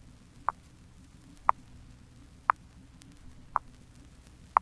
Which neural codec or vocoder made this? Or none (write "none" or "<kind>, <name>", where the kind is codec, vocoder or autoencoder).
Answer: none